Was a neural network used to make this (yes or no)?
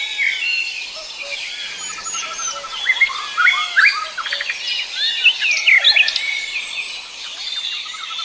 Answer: no